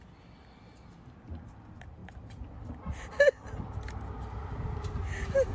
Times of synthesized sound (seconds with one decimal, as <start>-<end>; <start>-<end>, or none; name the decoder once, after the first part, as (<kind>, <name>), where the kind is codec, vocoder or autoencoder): none